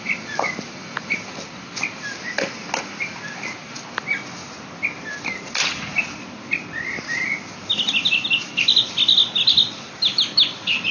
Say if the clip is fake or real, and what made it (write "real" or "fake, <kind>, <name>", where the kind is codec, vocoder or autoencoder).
real